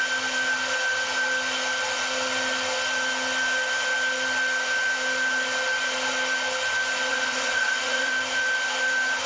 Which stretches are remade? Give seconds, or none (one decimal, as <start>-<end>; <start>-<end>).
7.1-8.1